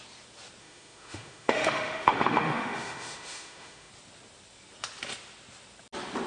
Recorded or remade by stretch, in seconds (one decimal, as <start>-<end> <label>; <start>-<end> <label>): 0.0-0.6 recorded; 0.6-3.9 remade; 3.9-6.3 recorded

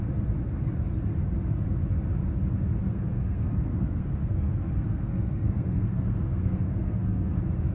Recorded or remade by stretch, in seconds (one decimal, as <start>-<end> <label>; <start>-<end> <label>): 0.0-2.9 recorded; 2.9-7.3 remade; 7.3-7.7 recorded

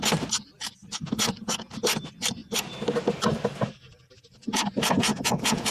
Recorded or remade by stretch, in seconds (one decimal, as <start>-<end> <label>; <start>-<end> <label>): 0.0-5.1 recorded; 5.1-5.7 remade

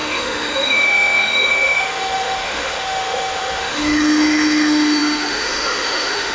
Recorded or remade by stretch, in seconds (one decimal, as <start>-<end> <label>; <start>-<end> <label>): 0.0-6.3 remade

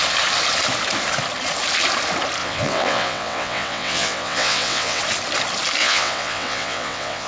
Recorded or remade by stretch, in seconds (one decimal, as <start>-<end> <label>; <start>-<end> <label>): 0.0-2.4 recorded; 2.4-5.0 remade; 5.0-5.8 recorded; 5.8-7.3 remade